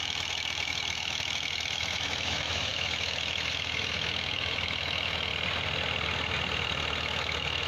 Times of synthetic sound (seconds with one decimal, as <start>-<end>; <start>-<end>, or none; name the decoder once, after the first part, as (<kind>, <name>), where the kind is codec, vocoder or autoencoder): 0.0-5.3 (autoencoder, DAC-VAE); 7.0-7.7

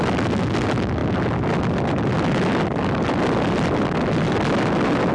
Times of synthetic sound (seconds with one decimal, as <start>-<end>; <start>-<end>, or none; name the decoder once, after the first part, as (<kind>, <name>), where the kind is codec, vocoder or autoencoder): none

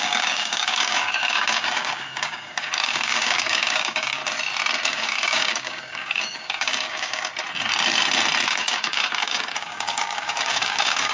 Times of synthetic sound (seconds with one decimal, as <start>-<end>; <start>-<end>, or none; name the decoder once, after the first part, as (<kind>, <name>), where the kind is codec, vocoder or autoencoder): 0.0-4.2 (codec, DAC); 4.9-7.3; 8.5-11.1

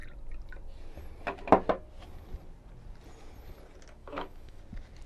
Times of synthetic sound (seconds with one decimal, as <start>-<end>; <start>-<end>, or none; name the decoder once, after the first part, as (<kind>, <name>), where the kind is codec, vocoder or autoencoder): 4.0-4.6 (autoencoder, DAC-VAE)

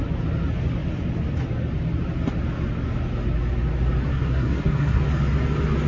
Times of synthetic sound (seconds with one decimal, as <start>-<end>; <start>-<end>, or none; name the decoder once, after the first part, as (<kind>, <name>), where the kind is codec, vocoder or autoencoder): 4.1-5.0 (codec, SNAC)

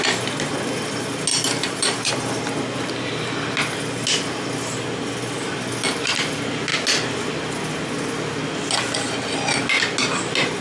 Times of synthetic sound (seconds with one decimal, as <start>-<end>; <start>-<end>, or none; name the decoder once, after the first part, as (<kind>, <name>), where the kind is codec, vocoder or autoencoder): 1.3-2.1 (vocoder, BigVGAN v2)

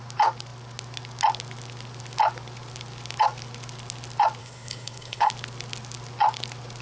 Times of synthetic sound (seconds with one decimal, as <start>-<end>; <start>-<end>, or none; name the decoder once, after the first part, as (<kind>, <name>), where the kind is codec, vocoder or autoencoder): 4.4-5.3 (codec, HILCodec)

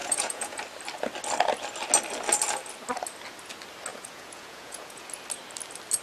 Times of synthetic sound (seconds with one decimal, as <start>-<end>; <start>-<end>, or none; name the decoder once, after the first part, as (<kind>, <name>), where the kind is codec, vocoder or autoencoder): 0.0-0.6 (vocoder, Vocos); 3.9-5.1